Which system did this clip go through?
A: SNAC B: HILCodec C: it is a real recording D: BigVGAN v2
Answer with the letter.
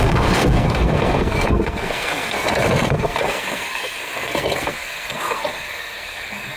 A